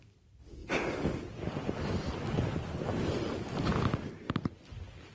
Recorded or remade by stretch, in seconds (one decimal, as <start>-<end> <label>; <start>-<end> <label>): 0.0-5.1 recorded